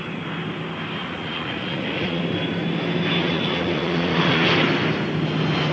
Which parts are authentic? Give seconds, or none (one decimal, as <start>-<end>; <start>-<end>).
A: 0.0-1.0; 2.2-3.2; 4.5-5.7